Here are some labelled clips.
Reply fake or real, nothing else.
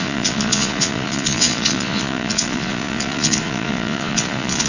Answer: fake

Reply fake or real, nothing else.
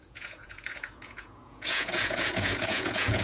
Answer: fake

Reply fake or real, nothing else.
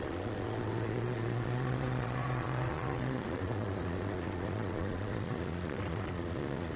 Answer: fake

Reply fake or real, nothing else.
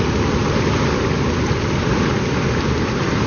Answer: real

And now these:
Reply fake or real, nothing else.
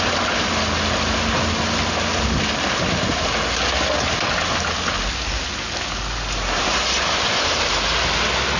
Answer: real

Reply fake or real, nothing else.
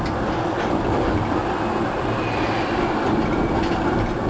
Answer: real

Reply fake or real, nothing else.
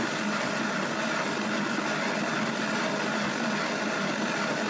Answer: real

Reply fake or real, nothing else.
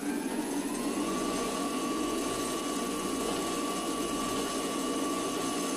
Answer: fake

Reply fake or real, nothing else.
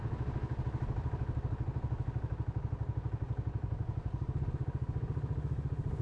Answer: real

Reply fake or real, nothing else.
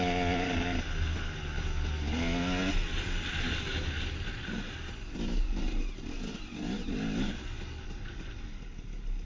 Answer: real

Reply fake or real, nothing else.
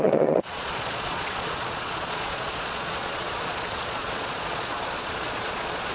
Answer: fake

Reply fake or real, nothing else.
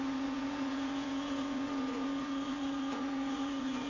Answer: fake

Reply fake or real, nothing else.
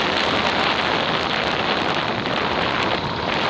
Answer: real